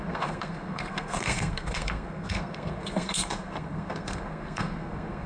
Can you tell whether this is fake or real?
fake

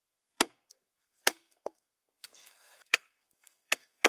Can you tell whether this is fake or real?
fake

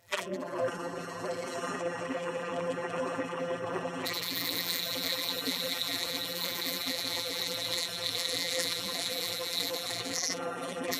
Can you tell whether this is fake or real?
fake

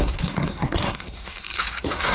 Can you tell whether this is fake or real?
fake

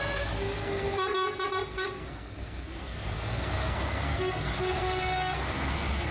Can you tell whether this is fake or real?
fake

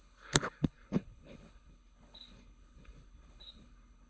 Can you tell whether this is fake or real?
fake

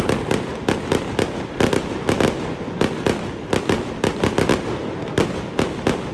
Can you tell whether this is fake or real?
real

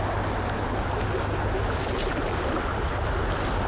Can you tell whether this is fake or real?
real